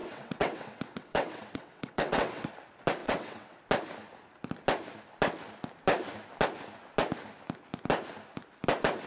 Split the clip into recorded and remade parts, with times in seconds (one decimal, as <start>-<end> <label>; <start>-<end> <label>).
0.0-2.5 remade; 2.5-3.0 recorded; 3.0-3.6 remade; 3.6-9.1 recorded

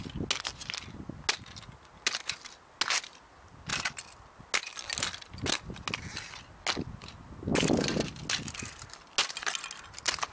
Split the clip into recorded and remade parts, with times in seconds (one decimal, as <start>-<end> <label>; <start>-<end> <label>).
0.0-10.3 recorded

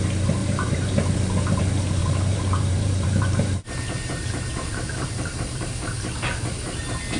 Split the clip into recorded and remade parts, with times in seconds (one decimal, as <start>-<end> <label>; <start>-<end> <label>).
0.0-0.4 recorded; 0.4-1.6 remade; 1.6-2.0 recorded; 2.0-6.1 remade; 6.1-7.2 recorded

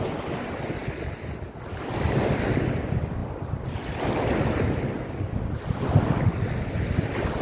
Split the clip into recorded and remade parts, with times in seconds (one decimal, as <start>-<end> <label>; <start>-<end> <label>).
0.0-7.4 recorded

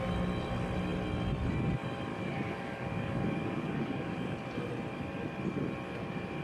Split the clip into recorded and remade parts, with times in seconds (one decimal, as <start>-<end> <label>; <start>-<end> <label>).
0.0-2.1 recorded; 2.1-4.2 remade; 4.2-6.4 recorded

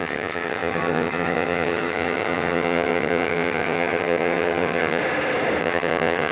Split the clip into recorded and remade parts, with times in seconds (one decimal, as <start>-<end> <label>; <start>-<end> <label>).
0.0-5.0 remade; 5.0-5.6 recorded; 5.6-6.3 remade

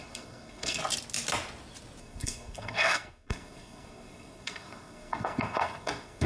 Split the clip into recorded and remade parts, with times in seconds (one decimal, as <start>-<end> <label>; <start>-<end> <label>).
0.0-0.8 remade; 0.8-2.0 recorded; 2.0-6.3 remade

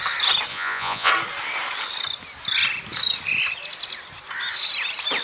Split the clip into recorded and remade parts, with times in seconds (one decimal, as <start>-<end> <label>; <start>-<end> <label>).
0.0-0.5 recorded; 0.5-1.1 remade; 1.1-5.2 recorded